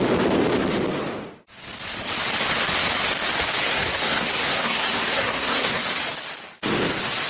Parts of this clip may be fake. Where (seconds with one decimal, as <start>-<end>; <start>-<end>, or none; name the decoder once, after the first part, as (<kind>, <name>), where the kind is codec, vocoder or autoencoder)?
3.6-5.8 (codec, SNAC)